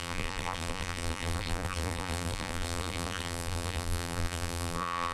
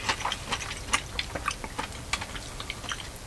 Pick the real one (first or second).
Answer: second